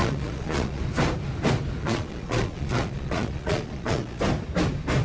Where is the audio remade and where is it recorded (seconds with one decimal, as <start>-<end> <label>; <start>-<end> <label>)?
0.0-0.8 remade; 0.8-1.8 recorded; 1.8-4.2 remade; 4.2-5.0 recorded